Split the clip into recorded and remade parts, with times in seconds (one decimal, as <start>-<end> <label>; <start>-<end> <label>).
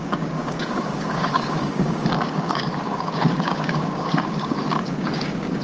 0.0-5.6 remade